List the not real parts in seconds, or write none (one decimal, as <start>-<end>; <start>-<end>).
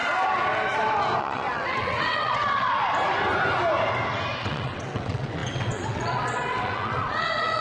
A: 1.2-2.8; 4.4-7.6